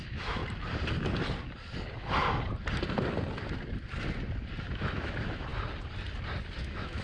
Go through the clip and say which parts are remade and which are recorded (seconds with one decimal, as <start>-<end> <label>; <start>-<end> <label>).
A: 0.0-0.4 remade; 0.4-4.6 recorded; 4.6-5.5 remade; 5.5-6.6 recorded; 6.6-7.0 remade